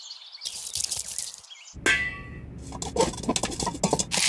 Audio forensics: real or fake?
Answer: real